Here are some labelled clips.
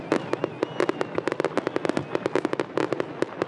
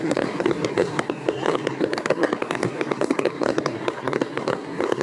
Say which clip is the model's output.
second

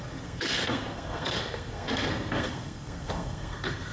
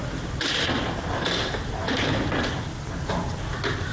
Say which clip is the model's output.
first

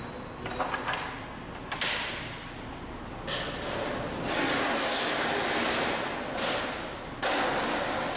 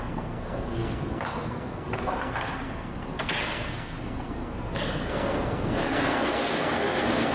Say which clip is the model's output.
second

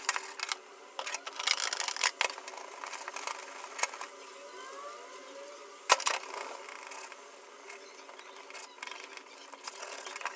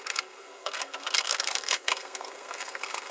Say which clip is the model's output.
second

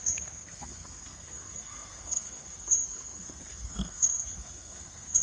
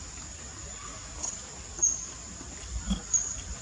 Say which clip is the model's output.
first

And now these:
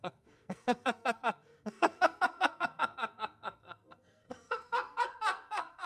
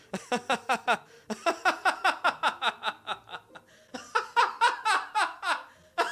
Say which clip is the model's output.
first